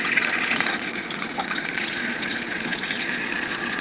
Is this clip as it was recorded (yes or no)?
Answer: no